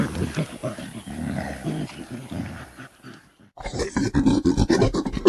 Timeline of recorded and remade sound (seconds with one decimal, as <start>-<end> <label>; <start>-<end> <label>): 0.0-0.6 recorded; 0.6-3.8 remade; 3.8-5.3 recorded